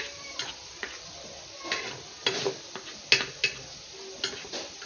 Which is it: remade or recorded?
recorded